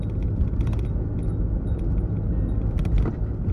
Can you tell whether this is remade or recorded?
recorded